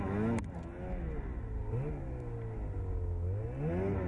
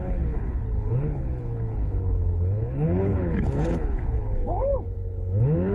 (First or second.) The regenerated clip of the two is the second